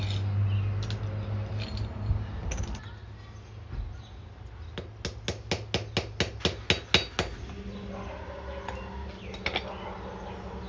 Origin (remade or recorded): recorded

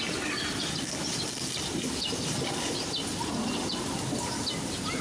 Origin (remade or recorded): recorded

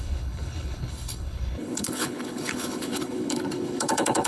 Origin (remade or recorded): remade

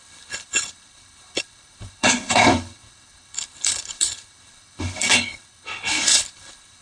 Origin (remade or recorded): remade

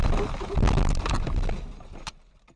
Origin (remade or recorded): recorded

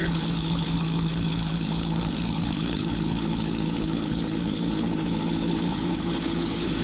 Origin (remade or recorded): remade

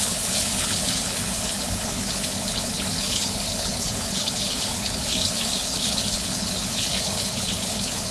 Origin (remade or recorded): remade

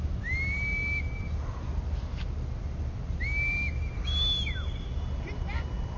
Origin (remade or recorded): recorded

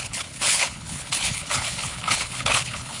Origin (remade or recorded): remade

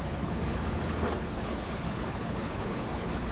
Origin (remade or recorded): remade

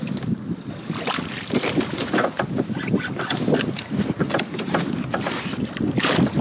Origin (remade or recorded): recorded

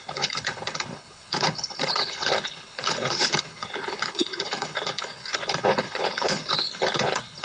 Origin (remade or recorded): remade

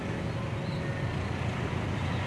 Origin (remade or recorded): recorded